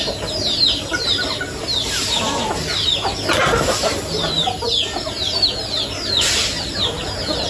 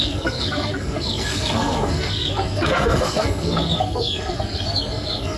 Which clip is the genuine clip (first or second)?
first